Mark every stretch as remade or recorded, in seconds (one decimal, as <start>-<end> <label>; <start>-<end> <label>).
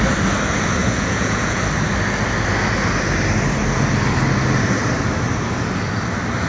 0.0-0.8 recorded; 0.8-1.6 remade; 1.6-6.5 recorded